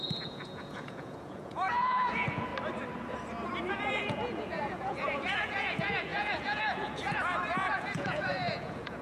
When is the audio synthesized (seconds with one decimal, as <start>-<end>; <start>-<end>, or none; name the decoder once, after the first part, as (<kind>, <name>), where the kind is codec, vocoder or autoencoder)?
0.0-2.5 (vocoder, Vocos); 3.7-9.0